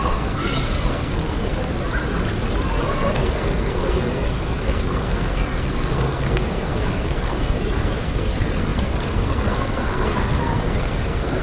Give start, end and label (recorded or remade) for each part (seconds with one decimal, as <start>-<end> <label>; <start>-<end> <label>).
0.0-1.6 remade; 1.6-2.8 recorded; 2.8-11.4 remade

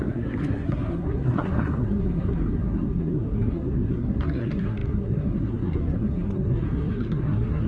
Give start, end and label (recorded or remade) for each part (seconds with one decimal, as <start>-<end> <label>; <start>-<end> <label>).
0.0-7.7 remade

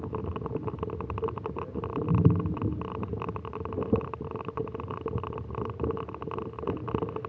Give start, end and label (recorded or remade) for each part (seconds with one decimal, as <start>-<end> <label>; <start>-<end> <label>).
0.0-7.3 recorded